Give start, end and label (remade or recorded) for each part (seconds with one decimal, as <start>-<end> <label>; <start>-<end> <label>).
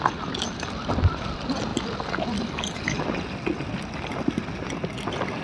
0.0-5.4 recorded